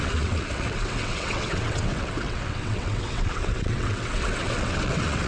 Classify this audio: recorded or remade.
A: remade